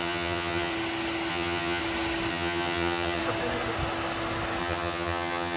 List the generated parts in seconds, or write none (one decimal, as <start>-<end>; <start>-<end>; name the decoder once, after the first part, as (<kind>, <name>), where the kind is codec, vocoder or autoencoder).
0.0-0.7 (vocoder, HiFi-GAN); 1.3-1.8; 2.3-3.2; 4.6-5.6